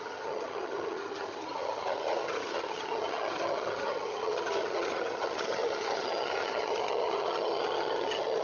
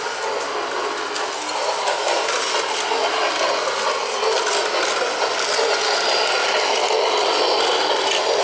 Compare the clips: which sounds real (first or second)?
second